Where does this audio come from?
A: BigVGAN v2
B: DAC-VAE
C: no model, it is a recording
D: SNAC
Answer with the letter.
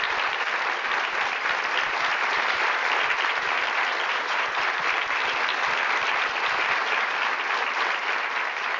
A